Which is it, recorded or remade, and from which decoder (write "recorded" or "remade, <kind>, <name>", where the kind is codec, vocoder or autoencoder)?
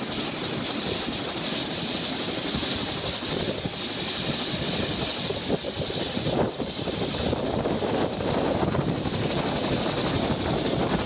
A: recorded